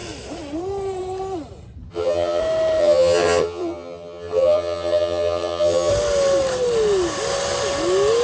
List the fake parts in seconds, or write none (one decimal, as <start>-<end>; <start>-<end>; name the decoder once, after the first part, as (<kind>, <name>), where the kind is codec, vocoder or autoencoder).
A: 1.9-2.4 (vocoder, HiFi-GAN); 2.8-5.9